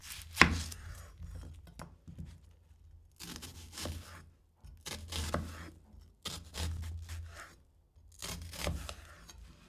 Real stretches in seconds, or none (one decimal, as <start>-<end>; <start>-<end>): 0.0-9.7